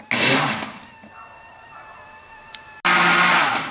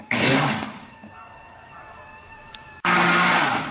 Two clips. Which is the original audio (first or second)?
first